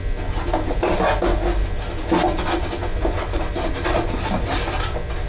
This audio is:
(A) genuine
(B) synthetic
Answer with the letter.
A